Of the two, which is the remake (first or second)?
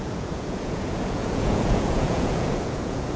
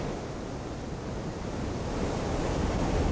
first